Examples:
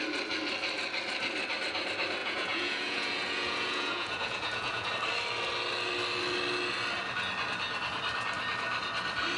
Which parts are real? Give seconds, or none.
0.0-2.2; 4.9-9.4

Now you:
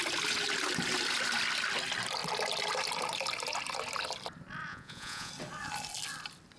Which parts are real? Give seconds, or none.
0.0-4.7; 5.3-6.6

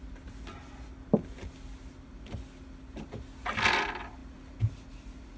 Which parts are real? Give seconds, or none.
0.0-5.4

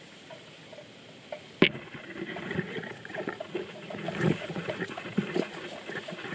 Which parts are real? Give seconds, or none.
0.6-2.5